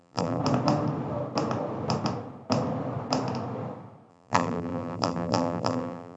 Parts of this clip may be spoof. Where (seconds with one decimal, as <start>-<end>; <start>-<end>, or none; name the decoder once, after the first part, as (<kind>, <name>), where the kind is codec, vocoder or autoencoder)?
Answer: 0.0-0.4 (vocoder, BigVGAN v2); 4.1-6.2